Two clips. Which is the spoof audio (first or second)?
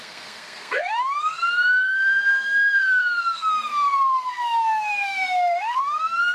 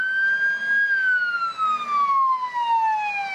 first